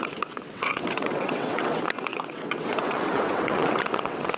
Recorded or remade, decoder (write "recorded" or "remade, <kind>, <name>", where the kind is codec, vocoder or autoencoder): remade, vocoder, WaveNeXt